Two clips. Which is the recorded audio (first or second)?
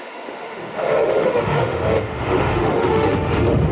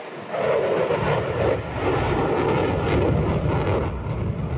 second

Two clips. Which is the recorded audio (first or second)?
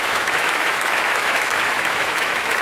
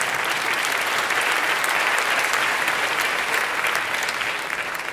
second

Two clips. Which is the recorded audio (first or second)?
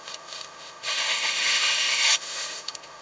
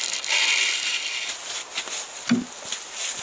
second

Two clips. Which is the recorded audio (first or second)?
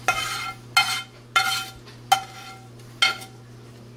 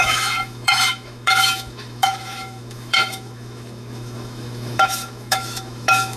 first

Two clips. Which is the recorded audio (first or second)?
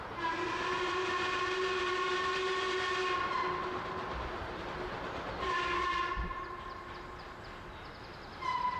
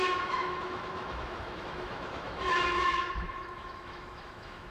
first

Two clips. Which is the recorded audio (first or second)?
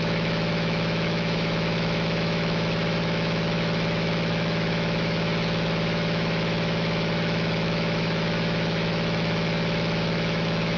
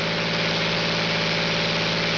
second